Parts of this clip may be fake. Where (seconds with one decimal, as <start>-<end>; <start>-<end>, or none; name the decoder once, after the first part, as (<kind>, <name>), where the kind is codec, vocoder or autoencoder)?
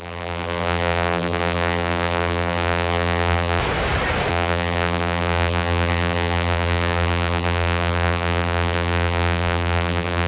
0.0-3.6 (vocoder, BigVGAN v2); 4.3-10.3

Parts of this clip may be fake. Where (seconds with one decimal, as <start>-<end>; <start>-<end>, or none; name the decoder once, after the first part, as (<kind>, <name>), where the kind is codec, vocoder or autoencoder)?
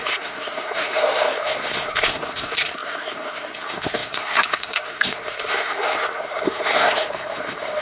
0.0-7.8 (codec, SNAC)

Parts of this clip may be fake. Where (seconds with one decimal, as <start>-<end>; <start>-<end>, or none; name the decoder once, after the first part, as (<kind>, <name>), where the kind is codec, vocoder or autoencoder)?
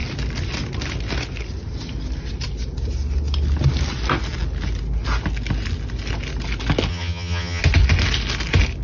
6.9-7.6 (vocoder, HiFi-GAN)